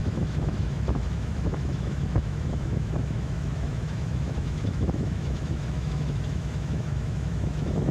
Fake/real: fake